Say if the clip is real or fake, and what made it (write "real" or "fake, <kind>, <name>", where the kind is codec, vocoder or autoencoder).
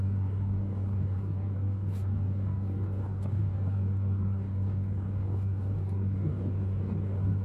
fake, codec, DAC